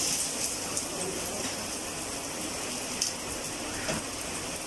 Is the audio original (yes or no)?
yes